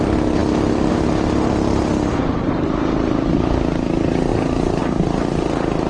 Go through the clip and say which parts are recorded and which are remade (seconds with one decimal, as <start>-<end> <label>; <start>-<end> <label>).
0.0-5.9 recorded